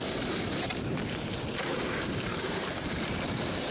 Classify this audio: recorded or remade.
remade